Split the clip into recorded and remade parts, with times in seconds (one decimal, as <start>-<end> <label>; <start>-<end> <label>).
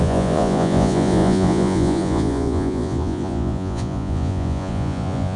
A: 0.0-5.4 remade